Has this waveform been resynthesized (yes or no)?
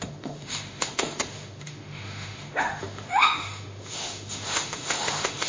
yes